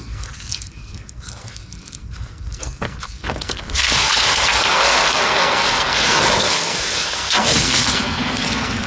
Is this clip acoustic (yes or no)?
no